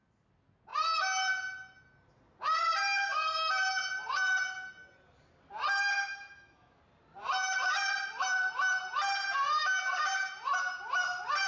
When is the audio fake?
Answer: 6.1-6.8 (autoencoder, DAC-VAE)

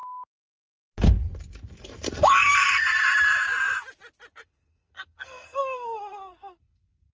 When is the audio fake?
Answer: 4.3-7.2 (codec, SNAC)

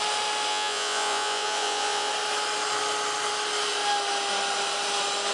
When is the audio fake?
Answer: 0.5-2.1 (vocoder, Vocos)

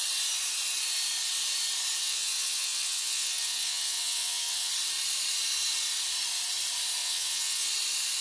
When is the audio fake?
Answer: 2.0-4.7 (vocoder, WaveNeXt); 7.0-7.7

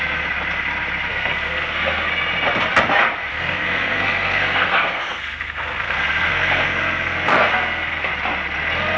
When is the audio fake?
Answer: 1.1-2.1 (codec, SNAC); 3.3-8.1

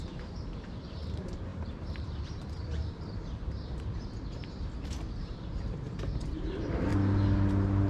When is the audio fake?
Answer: 0.0-6.9 (vocoder, BigVGAN v2)

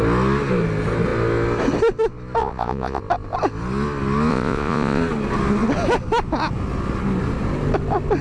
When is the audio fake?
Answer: 2.4-3.0 (vocoder, Vocos); 4.3-5.0